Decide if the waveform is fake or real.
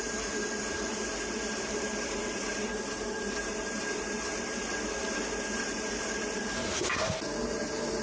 real